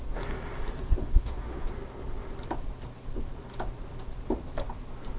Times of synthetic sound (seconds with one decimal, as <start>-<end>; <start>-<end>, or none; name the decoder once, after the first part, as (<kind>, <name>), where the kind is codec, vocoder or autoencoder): 1.0-1.7 (autoencoder, DAC-VAE)